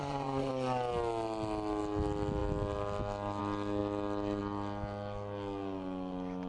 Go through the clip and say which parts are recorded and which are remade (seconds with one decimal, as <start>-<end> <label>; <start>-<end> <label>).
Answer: 0.0-0.5 remade; 0.5-6.5 recorded